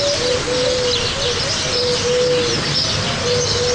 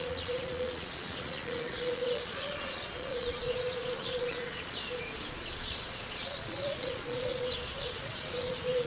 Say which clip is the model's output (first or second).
second